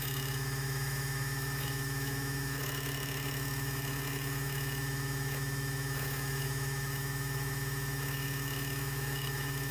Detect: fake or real fake